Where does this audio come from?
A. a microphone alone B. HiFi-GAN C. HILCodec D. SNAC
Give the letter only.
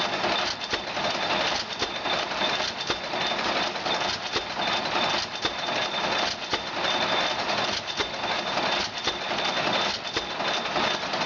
A